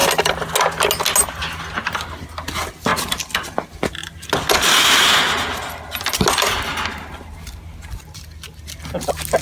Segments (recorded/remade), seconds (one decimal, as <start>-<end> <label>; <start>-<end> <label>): 0.0-9.4 recorded